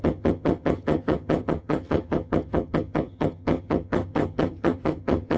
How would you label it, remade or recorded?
remade